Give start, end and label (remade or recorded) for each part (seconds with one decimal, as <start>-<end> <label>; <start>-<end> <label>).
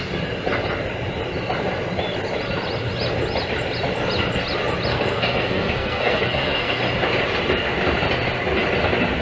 0.0-4.9 recorded; 4.9-6.8 remade; 6.8-9.2 recorded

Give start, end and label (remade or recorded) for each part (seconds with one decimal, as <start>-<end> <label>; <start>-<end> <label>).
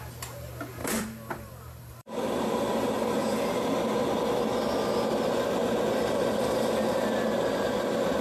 0.0-0.8 recorded; 0.8-3.3 remade; 3.3-8.2 recorded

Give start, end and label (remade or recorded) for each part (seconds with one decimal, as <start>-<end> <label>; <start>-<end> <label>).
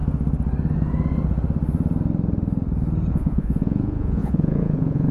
0.0-3.1 recorded; 3.1-5.1 remade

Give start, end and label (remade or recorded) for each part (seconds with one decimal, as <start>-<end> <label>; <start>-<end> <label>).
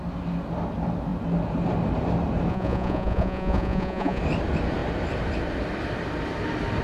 0.0-2.5 recorded; 2.5-4.2 remade; 4.2-6.8 recorded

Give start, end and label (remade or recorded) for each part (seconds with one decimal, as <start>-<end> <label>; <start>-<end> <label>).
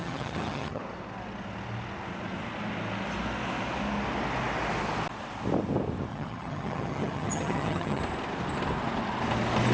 0.0-0.8 remade; 0.8-6.1 recorded; 6.1-8.0 remade; 8.0-9.7 recorded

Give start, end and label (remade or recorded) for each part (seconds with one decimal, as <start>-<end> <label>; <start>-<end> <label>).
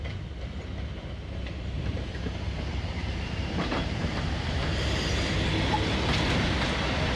0.0-3.0 recorded; 3.0-4.8 remade; 4.8-7.2 recorded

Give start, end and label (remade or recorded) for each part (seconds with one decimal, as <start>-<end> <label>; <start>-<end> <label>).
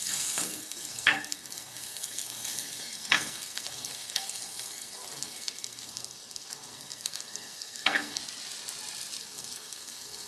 0.0-8.2 remade; 8.2-9.2 recorded; 9.2-10.3 remade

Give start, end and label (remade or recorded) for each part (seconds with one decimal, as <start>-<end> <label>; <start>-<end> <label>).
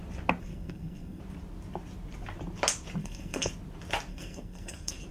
0.0-0.4 recorded; 0.4-1.2 remade; 1.2-3.0 recorded; 3.0-3.5 remade; 3.5-4.1 recorded; 4.1-5.1 remade